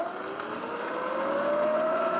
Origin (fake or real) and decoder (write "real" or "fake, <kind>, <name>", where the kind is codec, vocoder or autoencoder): real